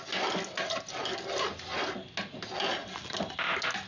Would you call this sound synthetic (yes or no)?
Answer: no